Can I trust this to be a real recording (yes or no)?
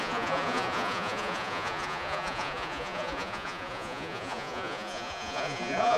no